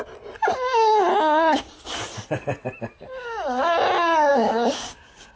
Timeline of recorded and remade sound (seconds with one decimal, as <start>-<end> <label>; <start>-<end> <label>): 0.0-4.3 recorded; 4.3-5.4 remade